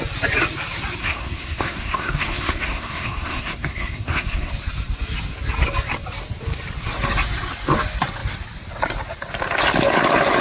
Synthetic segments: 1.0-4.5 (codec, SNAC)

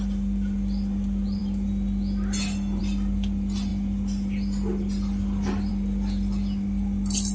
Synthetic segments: none

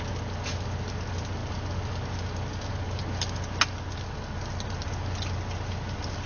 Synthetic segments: none

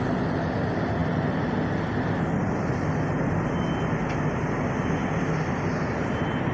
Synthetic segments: none

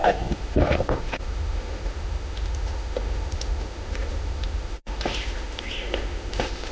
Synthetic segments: 0.0-6.7 (autoencoder, DAC-VAE)